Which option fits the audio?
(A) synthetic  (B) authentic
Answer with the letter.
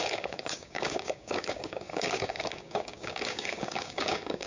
A